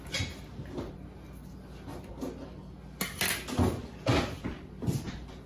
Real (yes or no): yes